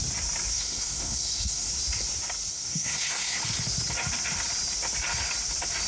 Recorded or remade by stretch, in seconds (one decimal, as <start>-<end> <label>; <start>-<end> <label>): 0.0-0.5 recorded; 0.5-1.7 remade; 1.7-2.5 recorded; 2.5-3.4 remade; 3.4-5.9 recorded